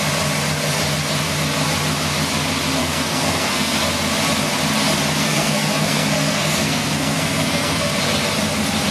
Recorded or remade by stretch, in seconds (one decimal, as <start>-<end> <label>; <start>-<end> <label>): 0.0-2.8 recorded; 2.8-3.8 remade; 3.8-5.2 recorded; 5.2-8.0 remade; 8.0-8.9 recorded

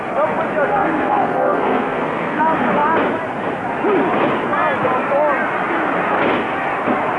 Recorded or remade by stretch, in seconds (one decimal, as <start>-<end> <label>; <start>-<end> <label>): 0.0-0.7 recorded; 0.7-2.4 remade; 2.4-7.2 recorded

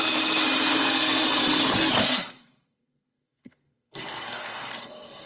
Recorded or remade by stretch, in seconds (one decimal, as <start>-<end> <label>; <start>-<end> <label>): 0.0-0.7 recorded; 0.7-1.6 remade; 1.6-2.0 recorded; 2.0-5.3 remade

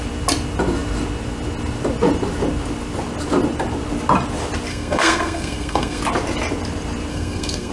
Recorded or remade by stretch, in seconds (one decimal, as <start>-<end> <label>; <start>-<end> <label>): 0.0-4.7 recorded; 4.7-6.0 remade; 6.0-7.1 recorded; 7.1-7.7 remade

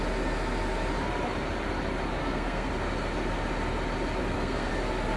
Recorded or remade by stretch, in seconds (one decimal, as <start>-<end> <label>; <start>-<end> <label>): 0.0-2.2 recorded; 2.2-2.7 remade; 2.7-4.2 recorded; 4.2-4.7 remade; 4.7-5.2 recorded

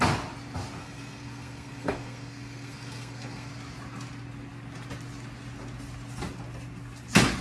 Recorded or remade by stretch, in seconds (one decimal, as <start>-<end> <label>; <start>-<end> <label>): 0.0-0.8 recorded; 0.8-3.5 remade; 3.5-7.4 recorded

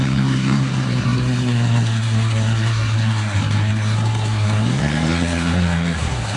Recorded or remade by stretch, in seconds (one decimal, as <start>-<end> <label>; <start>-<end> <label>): 0.0-6.4 remade